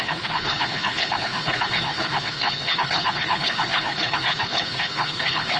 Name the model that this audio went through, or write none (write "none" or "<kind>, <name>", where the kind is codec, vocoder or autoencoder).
codec, HILCodec